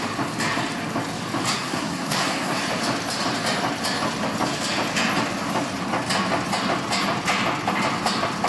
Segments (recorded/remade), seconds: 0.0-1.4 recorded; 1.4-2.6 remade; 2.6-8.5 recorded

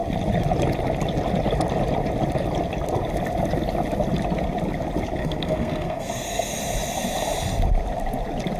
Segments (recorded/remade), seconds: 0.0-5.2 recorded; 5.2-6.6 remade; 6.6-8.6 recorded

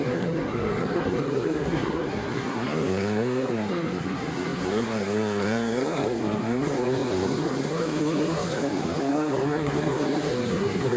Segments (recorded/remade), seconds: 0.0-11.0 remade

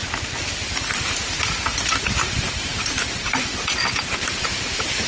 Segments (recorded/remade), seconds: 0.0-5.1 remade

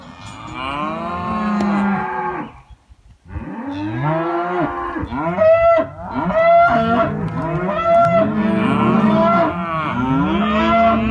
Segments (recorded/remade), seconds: 0.0-11.1 recorded

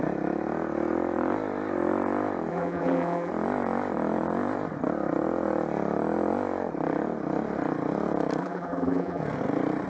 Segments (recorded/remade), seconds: 0.0-2.5 recorded; 2.5-3.3 remade; 3.3-8.4 recorded; 8.4-9.2 remade; 9.2-9.9 recorded